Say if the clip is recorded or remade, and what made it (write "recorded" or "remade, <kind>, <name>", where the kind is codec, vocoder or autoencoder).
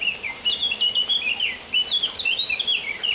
recorded